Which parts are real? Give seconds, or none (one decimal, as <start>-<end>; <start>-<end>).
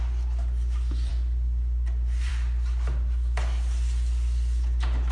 0.0-5.1